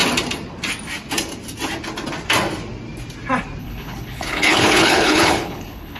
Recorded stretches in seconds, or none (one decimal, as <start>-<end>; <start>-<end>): 0.0-3.6